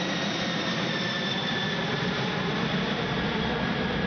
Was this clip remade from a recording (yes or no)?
yes